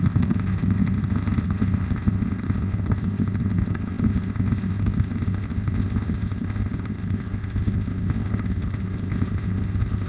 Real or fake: fake